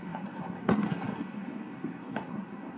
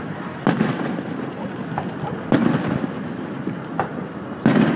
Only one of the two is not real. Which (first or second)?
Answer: first